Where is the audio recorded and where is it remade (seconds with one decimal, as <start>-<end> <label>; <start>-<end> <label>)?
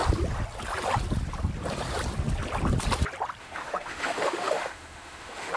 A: 0.0-3.4 recorded; 3.4-5.6 remade